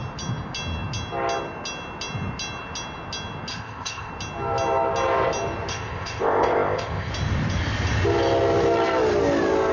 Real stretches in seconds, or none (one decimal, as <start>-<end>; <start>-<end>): 0.0-3.5; 4.1-5.7; 7.1-9.7

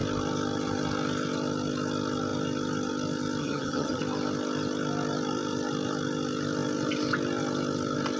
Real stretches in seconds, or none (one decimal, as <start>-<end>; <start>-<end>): 0.0-3.4; 4.0-8.2

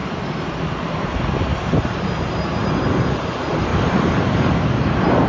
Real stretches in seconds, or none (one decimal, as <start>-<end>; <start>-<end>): 0.0-1.5; 2.0-3.7; 4.5-5.3

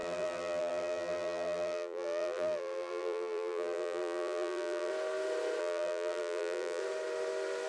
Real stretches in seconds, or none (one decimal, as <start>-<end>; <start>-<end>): 4.9-5.6; 6.8-7.7

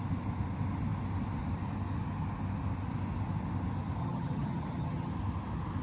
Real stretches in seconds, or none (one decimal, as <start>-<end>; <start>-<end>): 0.0-4.0; 5.1-5.8